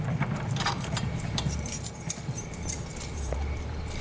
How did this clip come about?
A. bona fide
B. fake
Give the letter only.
B